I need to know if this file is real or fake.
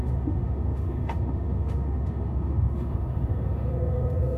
fake